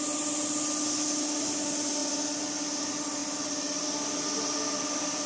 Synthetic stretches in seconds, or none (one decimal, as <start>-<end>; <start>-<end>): 3.2-5.3